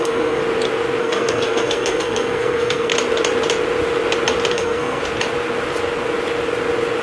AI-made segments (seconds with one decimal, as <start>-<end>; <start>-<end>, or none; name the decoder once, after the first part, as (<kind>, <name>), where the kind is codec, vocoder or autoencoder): 0.0-0.4 (codec, SNAC); 1.0-2.9; 4.5-5.0